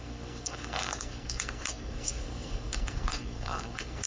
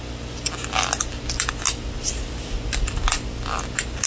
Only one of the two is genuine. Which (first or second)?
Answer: second